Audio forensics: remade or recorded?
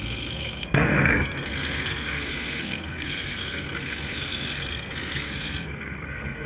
remade